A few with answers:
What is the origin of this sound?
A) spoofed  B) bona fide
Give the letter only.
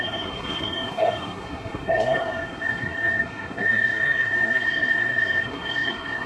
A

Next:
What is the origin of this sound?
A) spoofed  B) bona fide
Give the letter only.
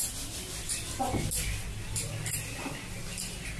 B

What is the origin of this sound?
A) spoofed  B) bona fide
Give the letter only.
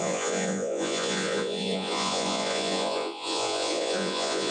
A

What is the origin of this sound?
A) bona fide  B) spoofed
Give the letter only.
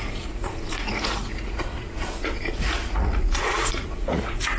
B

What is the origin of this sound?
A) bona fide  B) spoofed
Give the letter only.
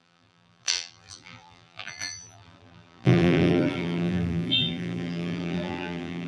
B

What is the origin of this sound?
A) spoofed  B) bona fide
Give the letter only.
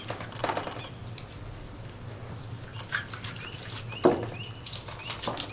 B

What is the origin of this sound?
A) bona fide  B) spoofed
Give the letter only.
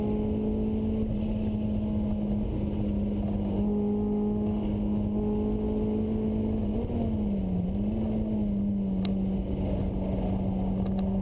A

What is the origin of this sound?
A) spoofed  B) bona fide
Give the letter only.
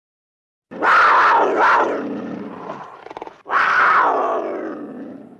B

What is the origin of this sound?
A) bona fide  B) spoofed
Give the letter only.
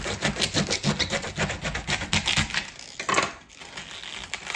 A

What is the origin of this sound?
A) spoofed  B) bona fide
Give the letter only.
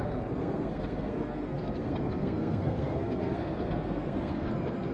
A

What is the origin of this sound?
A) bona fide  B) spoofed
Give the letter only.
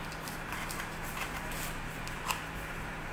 A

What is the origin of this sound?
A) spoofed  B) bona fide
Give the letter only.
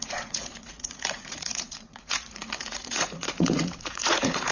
A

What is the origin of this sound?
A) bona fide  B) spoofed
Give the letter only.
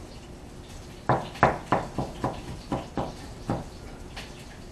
B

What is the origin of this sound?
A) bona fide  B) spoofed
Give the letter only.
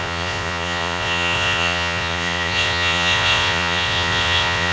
B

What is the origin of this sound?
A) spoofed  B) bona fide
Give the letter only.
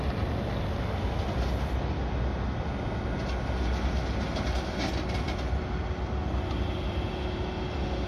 B